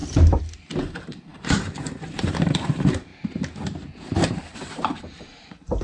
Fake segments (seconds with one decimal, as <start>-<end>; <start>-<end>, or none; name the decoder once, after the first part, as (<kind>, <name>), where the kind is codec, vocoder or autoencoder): 0.8-3.1 (vocoder, BigVGAN v2); 4.3-5.8